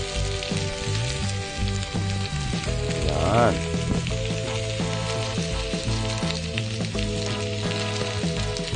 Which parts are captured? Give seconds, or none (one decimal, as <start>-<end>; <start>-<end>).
0.0-8.8